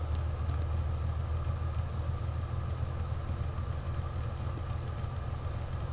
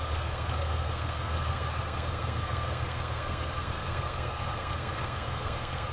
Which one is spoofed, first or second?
second